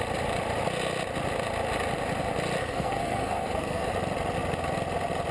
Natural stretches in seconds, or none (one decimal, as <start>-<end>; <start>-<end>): 0.0-2.6; 3.9-5.3